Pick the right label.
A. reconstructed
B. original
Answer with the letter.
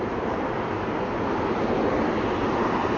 B